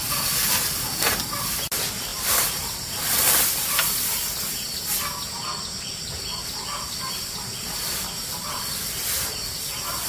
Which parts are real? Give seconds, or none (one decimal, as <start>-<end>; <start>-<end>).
0.0-2.1; 4.2-10.1

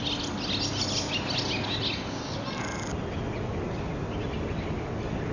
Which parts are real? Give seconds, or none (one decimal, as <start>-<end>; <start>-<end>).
0.0-5.3

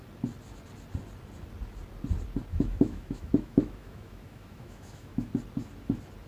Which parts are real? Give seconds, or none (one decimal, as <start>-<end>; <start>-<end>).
0.0-2.5; 5.3-6.3

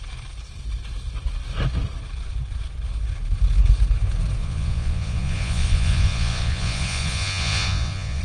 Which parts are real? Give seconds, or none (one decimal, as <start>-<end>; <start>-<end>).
0.0-4.4